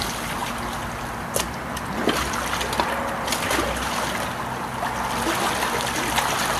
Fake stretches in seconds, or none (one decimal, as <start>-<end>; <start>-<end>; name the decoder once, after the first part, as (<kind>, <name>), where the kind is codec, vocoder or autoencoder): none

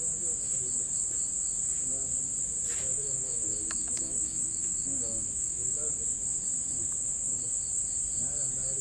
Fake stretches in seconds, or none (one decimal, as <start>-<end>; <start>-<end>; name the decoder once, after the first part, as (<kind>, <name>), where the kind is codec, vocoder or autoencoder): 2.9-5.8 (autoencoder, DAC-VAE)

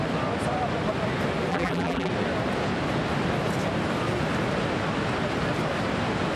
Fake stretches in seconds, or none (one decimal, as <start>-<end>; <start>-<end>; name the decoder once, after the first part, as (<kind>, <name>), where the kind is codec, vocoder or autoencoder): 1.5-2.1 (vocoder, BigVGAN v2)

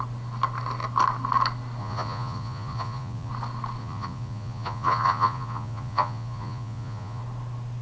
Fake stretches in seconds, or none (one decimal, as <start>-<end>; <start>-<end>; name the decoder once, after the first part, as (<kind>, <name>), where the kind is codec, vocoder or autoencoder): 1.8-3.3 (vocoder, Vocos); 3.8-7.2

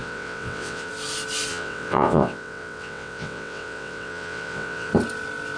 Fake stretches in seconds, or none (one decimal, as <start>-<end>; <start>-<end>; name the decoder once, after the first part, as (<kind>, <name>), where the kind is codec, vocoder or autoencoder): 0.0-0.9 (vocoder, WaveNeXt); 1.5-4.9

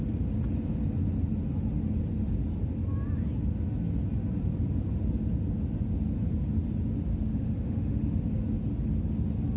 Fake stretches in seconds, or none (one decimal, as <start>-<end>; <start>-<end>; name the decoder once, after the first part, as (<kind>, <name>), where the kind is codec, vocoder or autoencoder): 7.1-8.2 (autoencoder, DAC-VAE)

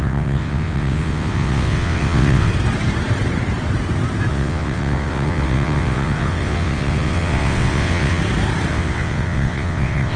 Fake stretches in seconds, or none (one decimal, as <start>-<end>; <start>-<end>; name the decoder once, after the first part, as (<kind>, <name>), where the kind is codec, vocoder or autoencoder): 0.0-2.5 (vocoder, WaveNeXt); 4.3-8.2; 8.7-10.2

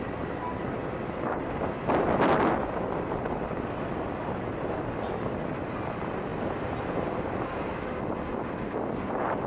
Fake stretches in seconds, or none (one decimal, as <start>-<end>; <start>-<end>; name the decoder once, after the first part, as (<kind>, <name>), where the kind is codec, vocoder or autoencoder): none